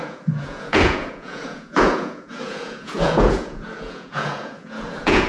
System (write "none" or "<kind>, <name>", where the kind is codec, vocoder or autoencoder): vocoder, Vocos